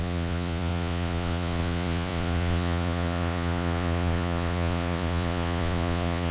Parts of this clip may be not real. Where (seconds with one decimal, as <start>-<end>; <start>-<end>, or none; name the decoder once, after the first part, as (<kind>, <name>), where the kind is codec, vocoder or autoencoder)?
0.0-6.3 (vocoder, Vocos)